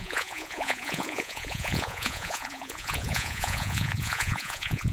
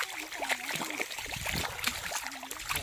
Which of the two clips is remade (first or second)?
first